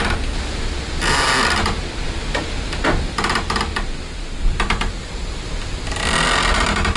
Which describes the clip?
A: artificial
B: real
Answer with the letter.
B